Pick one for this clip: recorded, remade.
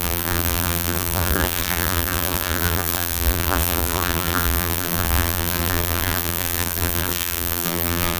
remade